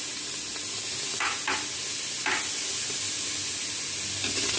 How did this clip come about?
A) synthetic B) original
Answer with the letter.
B